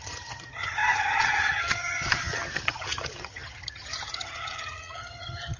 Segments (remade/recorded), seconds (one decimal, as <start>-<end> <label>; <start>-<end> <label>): 0.0-5.6 remade